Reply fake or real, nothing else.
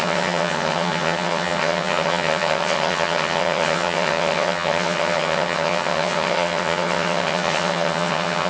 fake